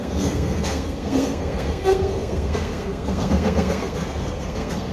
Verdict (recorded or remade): remade